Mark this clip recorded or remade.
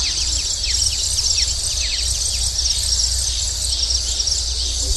recorded